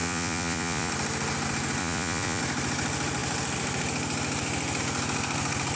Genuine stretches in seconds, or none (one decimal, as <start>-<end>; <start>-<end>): 0.9-1.8; 2.4-5.8